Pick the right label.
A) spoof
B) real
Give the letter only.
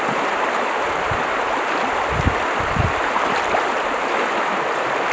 A